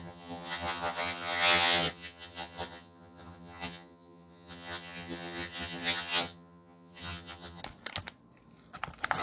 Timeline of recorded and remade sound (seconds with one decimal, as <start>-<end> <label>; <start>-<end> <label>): 0.0-7.6 remade; 7.6-9.2 recorded